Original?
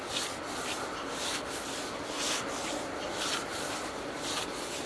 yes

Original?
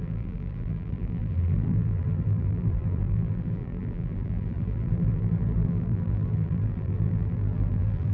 no